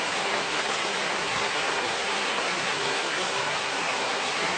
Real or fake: fake